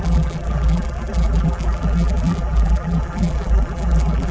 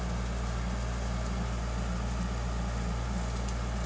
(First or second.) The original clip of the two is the second